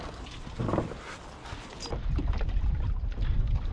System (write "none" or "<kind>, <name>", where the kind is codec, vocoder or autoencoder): none